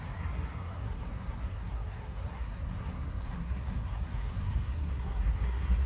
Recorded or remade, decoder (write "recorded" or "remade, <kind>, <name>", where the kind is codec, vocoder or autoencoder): remade, codec, SNAC